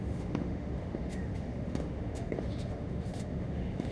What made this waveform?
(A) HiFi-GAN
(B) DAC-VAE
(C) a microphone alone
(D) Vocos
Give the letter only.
B